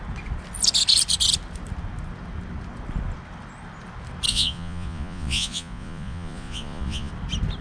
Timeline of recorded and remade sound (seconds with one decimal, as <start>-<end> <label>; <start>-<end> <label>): 0.0-4.3 recorded; 4.3-7.1 remade; 7.1-7.6 recorded